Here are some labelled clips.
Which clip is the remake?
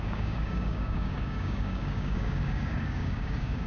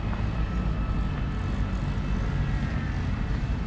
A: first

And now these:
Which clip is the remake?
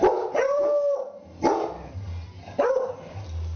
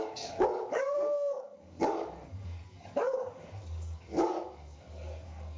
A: second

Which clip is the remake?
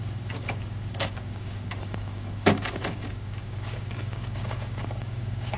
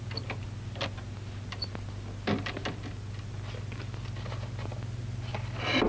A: first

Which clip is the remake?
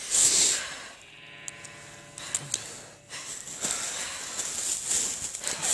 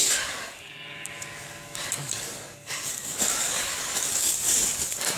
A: second